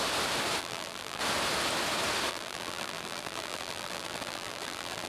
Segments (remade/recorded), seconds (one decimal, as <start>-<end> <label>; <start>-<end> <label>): 0.0-0.6 recorded; 0.6-1.2 remade; 1.2-2.3 recorded; 2.3-5.1 remade